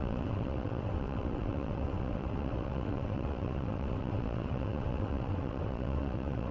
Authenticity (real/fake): fake